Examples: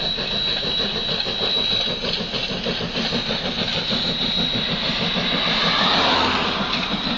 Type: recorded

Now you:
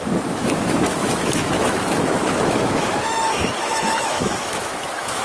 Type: remade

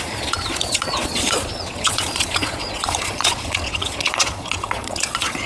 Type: remade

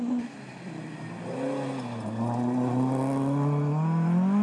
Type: recorded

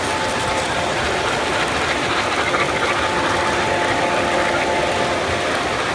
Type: recorded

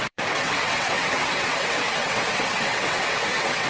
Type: remade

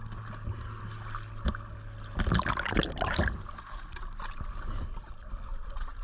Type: recorded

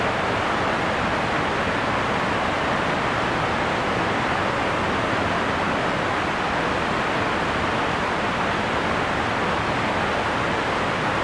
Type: recorded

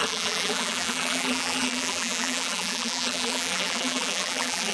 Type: remade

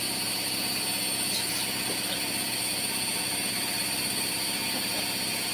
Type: recorded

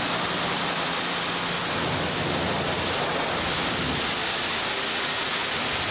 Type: recorded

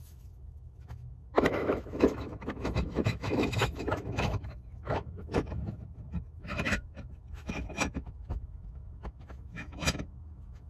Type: remade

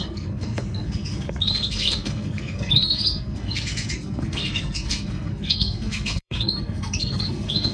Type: remade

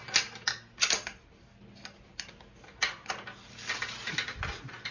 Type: recorded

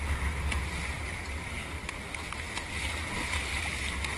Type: recorded